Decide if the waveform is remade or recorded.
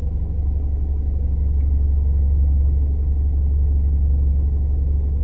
recorded